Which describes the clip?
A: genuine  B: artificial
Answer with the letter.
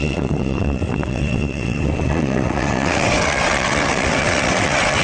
B